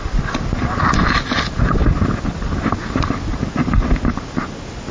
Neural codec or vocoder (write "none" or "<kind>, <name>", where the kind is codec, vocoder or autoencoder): none